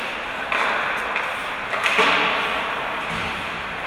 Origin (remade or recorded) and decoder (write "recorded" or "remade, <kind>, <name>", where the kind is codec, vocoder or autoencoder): recorded